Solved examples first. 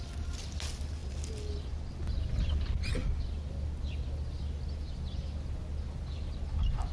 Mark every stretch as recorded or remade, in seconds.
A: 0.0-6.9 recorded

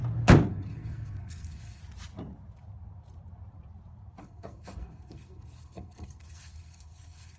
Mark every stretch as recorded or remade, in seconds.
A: 0.0-0.5 recorded; 0.5-1.8 remade; 1.8-4.2 recorded; 4.2-7.4 remade

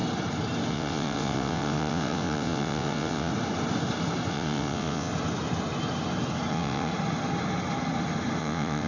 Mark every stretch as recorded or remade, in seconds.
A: 0.0-0.7 recorded; 0.7-3.3 remade; 3.3-4.3 recorded; 4.3-5.1 remade; 5.1-6.5 recorded; 6.5-6.9 remade; 6.9-8.4 recorded; 8.4-8.9 remade

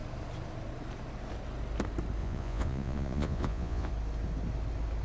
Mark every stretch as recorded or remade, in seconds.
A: 0.0-2.2 recorded; 2.2-3.9 remade; 3.9-5.0 recorded

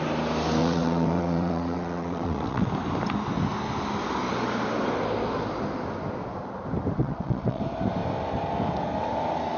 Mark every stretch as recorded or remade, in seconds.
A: 0.0-0.6 recorded; 0.6-2.7 remade; 2.7-7.0 recorded; 7.0-7.6 remade; 7.6-9.6 recorded

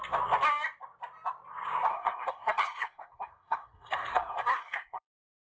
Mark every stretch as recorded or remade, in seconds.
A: 0.0-1.9 recorded; 1.9-5.6 remade